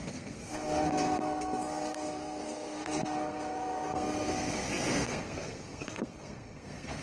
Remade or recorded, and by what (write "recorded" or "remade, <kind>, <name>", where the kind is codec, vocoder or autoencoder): remade, codec, SNAC